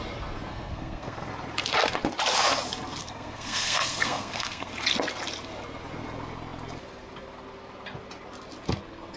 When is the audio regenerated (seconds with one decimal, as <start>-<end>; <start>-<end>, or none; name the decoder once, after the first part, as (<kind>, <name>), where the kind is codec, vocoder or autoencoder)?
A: 0.5-1.3 (codec, SNAC); 3.0-4.7